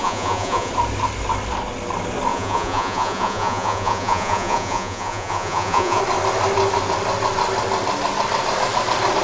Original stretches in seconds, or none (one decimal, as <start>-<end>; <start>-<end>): 0.7-2.3; 6.0-9.2